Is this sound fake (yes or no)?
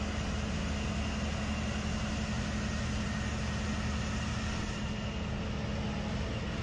no